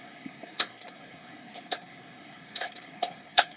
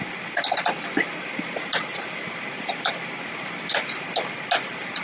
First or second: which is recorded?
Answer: second